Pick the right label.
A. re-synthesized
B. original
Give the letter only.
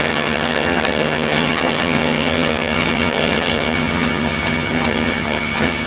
A